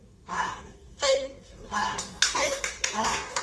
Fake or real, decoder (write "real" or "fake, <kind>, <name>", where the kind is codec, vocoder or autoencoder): fake, codec, SNAC